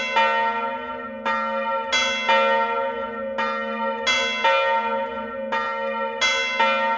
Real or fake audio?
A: real